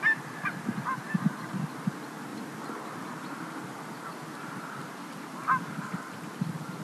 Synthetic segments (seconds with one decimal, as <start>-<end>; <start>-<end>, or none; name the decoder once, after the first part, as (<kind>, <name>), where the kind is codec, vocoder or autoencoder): none